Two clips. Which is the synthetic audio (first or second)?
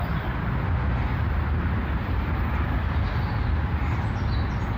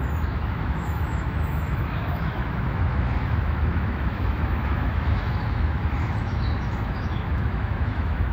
second